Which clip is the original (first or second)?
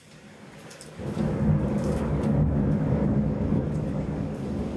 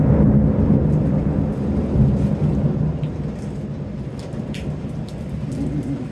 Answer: second